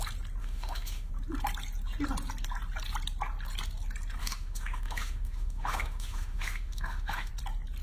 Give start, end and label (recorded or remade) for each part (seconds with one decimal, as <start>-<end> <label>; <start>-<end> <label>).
0.0-0.4 recorded; 0.4-1.1 remade; 1.1-4.2 recorded; 4.2-7.3 remade; 7.3-7.8 recorded